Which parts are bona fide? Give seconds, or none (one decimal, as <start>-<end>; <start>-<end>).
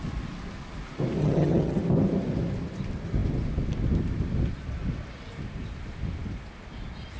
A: 0.0-1.2; 1.8-7.2